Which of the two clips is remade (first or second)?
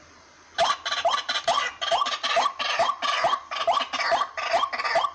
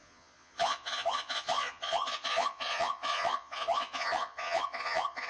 second